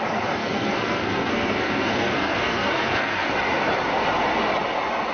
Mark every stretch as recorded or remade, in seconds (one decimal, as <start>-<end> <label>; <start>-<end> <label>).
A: 0.0-0.4 recorded; 0.4-3.3 remade; 3.3-5.1 recorded